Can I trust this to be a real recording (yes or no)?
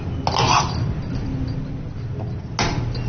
yes